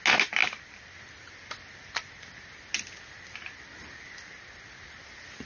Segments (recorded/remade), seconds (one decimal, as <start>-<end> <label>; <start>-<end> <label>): 0.0-5.5 recorded